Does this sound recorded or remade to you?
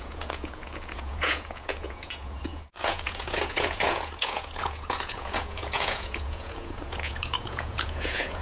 remade